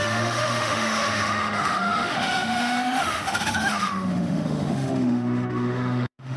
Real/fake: fake